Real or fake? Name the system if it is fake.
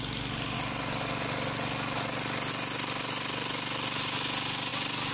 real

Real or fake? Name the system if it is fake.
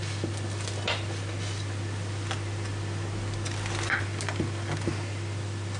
real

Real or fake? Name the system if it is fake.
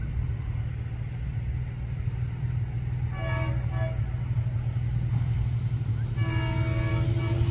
real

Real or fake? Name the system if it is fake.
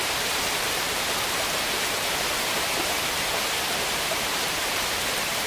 fake, vocoder, BigVGAN v2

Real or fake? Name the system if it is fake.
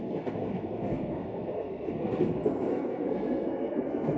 fake, codec, SNAC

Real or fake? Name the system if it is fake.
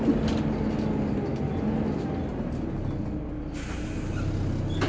real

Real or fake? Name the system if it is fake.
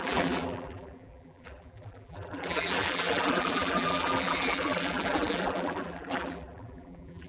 fake, vocoder, BigVGAN v2